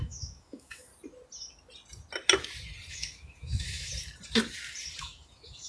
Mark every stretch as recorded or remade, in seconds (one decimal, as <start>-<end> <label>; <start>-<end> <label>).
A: 0.0-0.9 remade; 0.9-2.9 recorded; 2.9-3.9 remade; 3.9-5.0 recorded; 5.0-5.7 remade